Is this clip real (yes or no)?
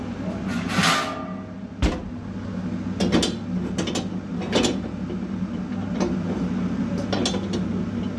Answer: yes